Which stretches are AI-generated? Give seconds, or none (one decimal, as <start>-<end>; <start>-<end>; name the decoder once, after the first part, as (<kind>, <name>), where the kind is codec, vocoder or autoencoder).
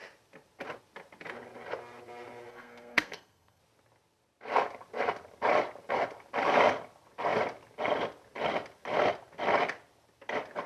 2.5-3.6 (codec, SNAC)